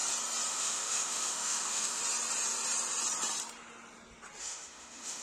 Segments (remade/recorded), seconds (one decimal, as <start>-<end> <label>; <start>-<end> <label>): 0.0-0.5 recorded; 0.5-2.0 remade; 2.0-4.4 recorded; 4.4-5.2 remade